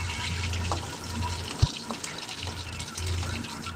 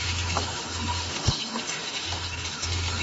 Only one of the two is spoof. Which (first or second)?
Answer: second